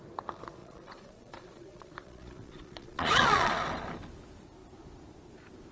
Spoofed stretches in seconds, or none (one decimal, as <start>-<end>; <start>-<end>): 0.6-3.5